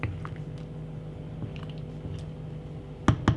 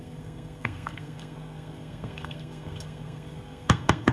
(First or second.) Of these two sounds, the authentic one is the first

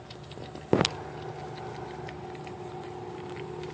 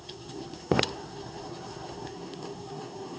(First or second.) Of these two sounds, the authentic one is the first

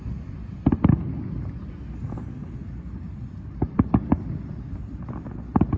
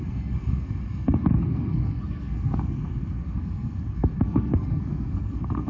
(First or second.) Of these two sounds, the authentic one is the first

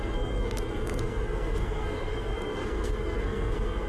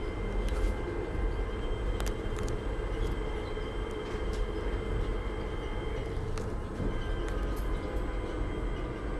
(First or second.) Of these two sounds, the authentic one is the second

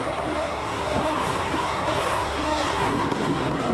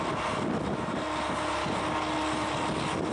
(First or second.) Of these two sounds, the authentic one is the second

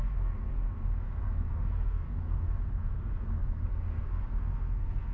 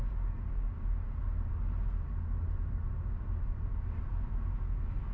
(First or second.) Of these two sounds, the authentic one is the second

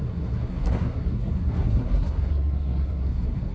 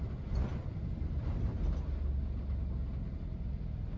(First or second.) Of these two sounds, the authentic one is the second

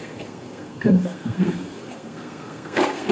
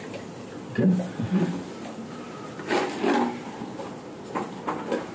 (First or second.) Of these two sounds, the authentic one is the second